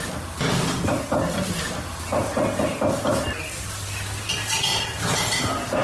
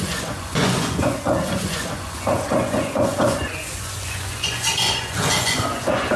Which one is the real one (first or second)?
first